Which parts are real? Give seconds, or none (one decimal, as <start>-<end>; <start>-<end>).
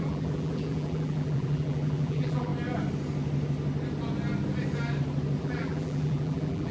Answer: 2.5-5.4